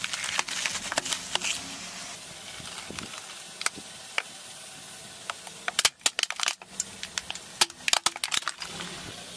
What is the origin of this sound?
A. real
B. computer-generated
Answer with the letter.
A